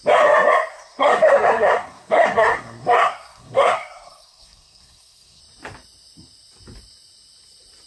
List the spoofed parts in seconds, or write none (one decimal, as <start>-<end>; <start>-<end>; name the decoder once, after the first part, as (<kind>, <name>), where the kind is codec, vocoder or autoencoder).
0.7-5.4 (codec, SNAC)